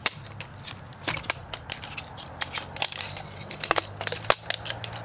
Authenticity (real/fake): real